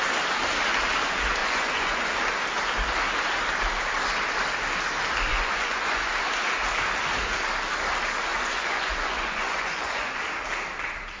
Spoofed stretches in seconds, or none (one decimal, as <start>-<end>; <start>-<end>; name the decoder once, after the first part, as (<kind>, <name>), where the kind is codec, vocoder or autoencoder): 1.4-2.1 (vocoder, Vocos); 5.3-6.1; 8.3-10.2